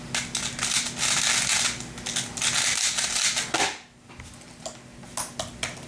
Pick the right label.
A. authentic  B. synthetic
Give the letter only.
A